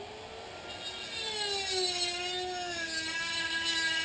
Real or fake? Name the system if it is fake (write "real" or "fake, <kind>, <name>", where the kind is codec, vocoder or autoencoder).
real